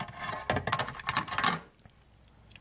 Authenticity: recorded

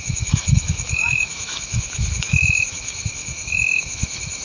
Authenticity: remade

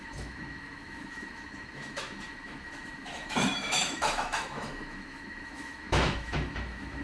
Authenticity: remade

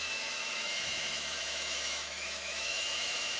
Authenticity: remade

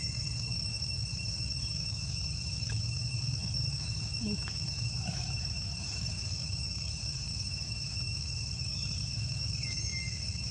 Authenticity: remade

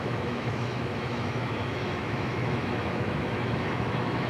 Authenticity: remade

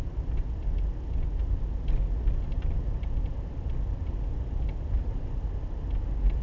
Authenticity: recorded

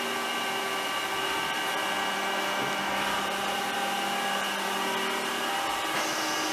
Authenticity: recorded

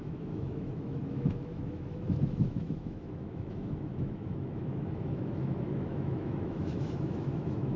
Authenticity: remade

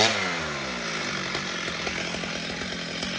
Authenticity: recorded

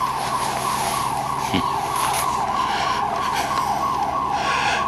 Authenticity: recorded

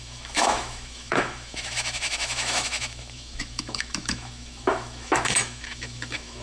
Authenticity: remade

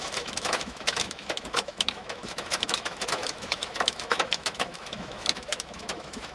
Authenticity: remade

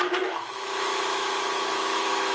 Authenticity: remade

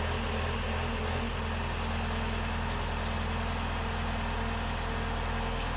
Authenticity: recorded